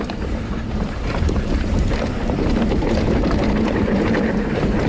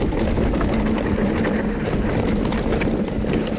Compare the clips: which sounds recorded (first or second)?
second